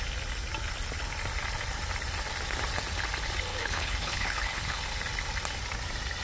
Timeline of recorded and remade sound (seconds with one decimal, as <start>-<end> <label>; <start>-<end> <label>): 0.0-3.5 recorded; 3.5-4.8 remade; 4.8-6.2 recorded